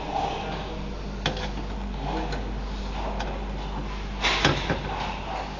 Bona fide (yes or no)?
yes